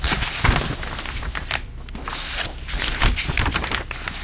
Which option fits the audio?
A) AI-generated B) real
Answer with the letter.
B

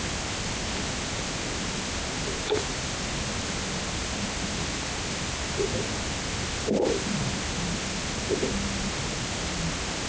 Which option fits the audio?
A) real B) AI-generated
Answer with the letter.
A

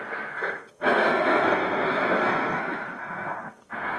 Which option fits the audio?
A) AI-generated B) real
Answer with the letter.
A